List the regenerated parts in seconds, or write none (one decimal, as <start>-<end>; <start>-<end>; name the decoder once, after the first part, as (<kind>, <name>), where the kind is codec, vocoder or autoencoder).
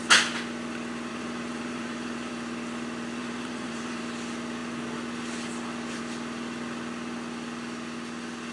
1.1-2.3 (vocoder, BigVGAN v2); 3.2-4.0